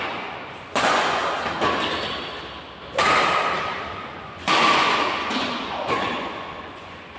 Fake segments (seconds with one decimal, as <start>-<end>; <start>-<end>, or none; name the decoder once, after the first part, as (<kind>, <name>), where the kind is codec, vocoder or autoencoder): 0.0-1.2 (vocoder, Vocos); 3.9-7.2

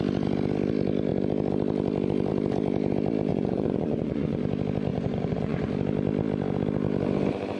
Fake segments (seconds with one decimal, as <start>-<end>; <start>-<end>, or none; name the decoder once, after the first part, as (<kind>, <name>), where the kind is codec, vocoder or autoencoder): 3.3-4.4 (vocoder, Vocos); 4.9-5.7

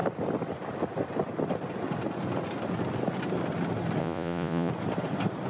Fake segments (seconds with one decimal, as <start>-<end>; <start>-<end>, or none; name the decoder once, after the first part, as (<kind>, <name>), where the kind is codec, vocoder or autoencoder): 4.0-4.7 (vocoder, Vocos)

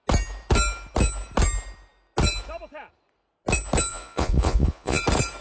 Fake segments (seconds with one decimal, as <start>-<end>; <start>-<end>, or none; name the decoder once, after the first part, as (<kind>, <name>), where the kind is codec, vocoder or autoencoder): 3.9-5.0 (vocoder, Vocos)

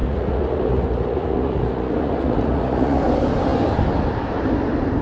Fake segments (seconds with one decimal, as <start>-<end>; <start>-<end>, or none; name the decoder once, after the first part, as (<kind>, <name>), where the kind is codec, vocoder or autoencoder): 0.0-3.0 (vocoder, Vocos)

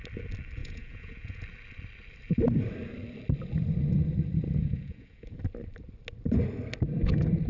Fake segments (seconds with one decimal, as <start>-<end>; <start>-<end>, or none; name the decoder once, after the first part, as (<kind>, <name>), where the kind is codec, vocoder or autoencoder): 0.6-1.4 (vocoder, Vocos); 4.6-5.4

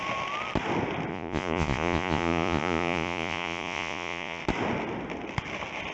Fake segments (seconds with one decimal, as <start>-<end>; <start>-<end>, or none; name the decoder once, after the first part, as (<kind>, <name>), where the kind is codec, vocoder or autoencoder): 1.1-4.4 (vocoder, Vocos)